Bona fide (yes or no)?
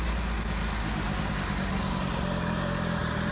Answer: yes